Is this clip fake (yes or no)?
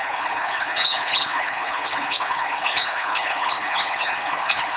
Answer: yes